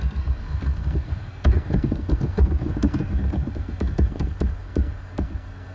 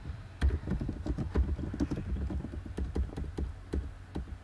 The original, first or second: second